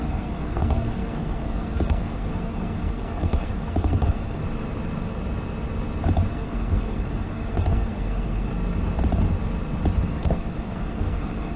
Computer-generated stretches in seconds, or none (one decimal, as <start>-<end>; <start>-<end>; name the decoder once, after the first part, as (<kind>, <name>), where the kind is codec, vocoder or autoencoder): 0.0-4.4 (codec, SNAC); 6.3-8.5; 10.1-11.6